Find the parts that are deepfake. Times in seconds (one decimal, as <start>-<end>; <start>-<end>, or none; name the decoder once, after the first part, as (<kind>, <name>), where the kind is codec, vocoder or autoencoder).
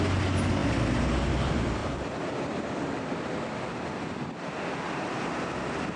1.8-2.3 (vocoder, BigVGAN v2)